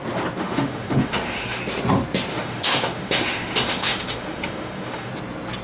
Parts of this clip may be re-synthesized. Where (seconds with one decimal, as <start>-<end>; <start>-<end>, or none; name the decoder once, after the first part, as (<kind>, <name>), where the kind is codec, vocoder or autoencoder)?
0.4-1.6 (autoencoder, DAC-VAE); 2.3-5.1